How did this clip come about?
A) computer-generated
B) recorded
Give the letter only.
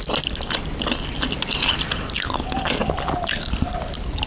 B